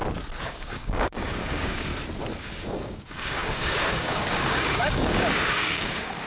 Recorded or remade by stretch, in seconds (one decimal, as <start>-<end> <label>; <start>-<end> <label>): 0.0-0.5 recorded; 0.5-1.9 remade; 1.9-2.4 recorded; 2.4-6.3 remade